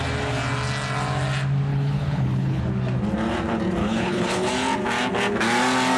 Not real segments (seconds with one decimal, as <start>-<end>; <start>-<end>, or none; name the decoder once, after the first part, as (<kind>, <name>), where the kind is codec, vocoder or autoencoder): 1.7-2.6 (codec, HILCodec); 3.8-4.5